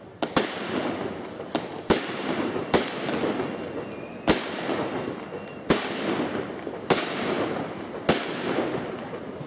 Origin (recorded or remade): recorded